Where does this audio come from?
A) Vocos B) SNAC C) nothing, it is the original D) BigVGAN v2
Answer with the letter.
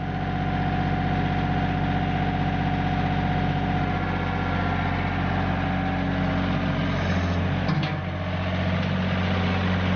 C